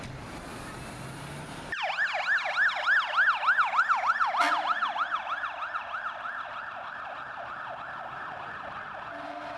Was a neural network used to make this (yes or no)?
no